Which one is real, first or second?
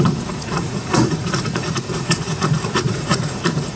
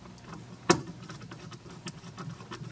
second